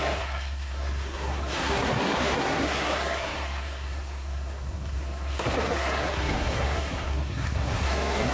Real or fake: fake